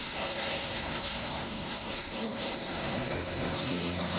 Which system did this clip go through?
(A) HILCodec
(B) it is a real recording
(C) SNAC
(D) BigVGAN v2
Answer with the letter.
C